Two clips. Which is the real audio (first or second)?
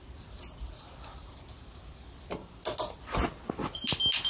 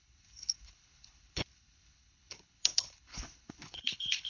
first